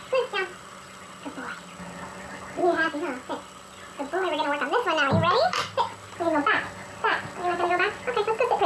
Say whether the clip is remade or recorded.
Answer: recorded